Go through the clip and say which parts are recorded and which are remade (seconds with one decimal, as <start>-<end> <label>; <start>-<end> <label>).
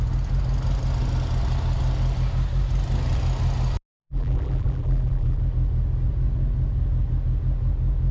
0.0-4.0 recorded; 4.0-5.4 remade; 5.4-8.1 recorded